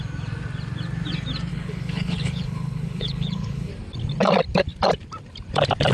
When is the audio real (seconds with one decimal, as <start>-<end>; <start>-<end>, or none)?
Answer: 0.0-1.5; 3.7-5.9